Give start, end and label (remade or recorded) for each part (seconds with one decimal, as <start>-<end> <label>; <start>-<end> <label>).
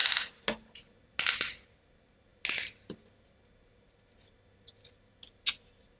0.0-6.0 recorded